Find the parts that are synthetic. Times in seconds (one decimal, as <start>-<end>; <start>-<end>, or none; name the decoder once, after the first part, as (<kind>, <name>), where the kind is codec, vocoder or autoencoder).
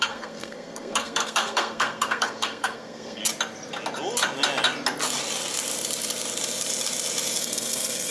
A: 0.0-3.2 (codec, SNAC); 7.4-8.1